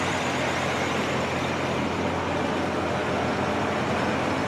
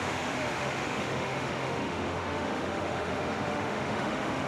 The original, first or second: first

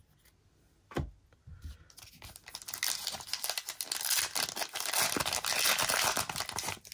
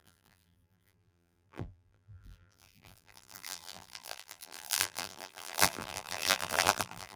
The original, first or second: first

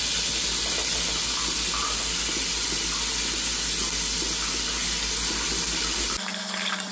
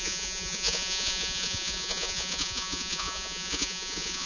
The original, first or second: first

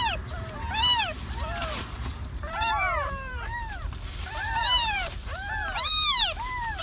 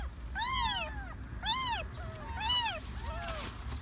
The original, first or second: second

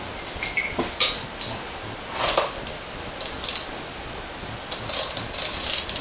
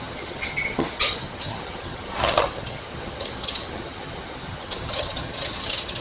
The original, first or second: first